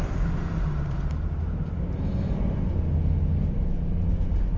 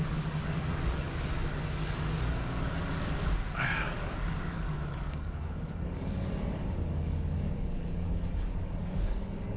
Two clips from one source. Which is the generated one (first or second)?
second